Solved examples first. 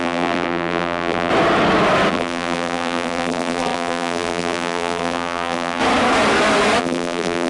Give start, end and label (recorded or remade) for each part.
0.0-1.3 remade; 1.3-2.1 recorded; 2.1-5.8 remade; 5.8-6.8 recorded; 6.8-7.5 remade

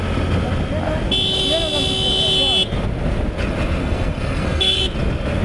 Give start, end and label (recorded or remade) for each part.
0.0-3.8 recorded; 3.8-4.8 remade; 4.8-5.4 recorded